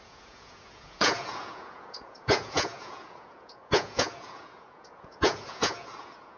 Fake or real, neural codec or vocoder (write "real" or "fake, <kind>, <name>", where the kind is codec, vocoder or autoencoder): fake, vocoder, Vocos